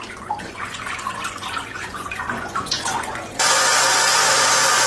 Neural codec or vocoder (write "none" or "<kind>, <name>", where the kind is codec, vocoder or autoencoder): vocoder, Vocos